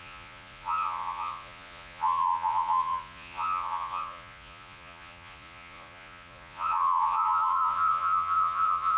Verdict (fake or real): fake